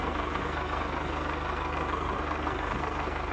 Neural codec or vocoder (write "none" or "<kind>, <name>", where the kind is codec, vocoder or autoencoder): codec, SNAC